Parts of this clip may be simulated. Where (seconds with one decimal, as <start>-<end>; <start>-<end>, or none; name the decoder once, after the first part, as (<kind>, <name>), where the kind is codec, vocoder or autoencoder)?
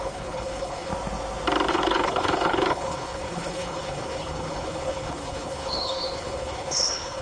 0.0-0.9 (codec, HILCodec); 1.7-7.2